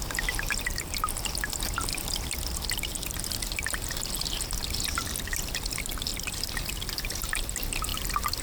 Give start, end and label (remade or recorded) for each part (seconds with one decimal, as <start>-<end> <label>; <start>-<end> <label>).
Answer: 0.0-6.1 recorded; 6.1-7.2 remade; 7.2-7.9 recorded; 7.9-8.4 remade